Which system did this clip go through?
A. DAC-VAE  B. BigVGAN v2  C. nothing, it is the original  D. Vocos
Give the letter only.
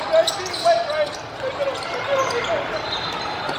C